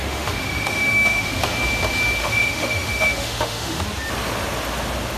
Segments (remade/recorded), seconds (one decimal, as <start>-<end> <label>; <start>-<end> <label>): 0.0-1.4 remade; 1.4-2.2 recorded; 2.2-3.8 remade; 3.8-5.2 recorded